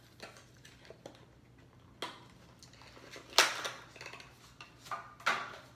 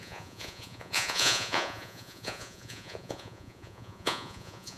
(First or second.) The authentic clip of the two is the first